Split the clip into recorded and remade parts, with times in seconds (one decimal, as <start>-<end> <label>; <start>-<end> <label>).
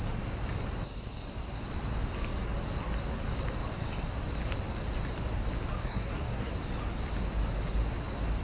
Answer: 0.0-5.8 recorded; 5.8-6.5 remade; 6.5-8.4 recorded